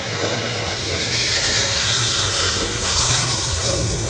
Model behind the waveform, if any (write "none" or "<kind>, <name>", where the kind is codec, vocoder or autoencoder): codec, SNAC